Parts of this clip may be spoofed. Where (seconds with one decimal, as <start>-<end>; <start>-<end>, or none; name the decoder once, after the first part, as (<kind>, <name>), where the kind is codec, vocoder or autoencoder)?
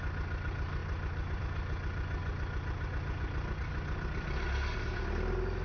none